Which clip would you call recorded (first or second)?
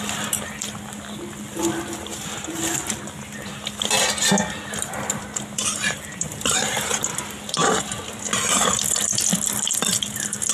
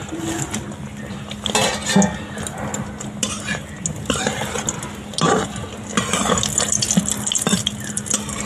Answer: second